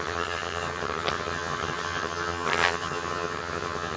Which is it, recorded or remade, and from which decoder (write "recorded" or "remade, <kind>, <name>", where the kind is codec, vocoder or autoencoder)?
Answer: remade, vocoder, HiFi-GAN